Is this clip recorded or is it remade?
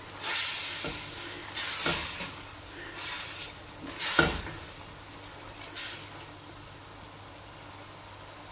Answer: recorded